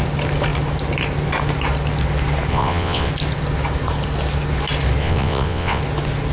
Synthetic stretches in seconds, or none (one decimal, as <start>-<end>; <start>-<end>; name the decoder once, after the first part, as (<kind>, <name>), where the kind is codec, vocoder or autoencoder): 2.5-3.1 (vocoder, WaveNeXt); 5.0-5.8